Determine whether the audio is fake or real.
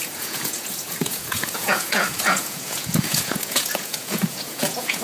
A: fake